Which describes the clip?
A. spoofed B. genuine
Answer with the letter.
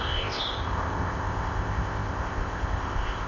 A